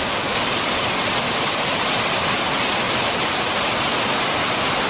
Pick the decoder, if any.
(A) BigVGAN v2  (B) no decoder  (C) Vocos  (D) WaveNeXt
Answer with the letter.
B